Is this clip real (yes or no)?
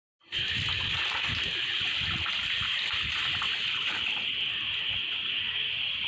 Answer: yes